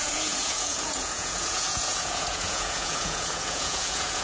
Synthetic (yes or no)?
yes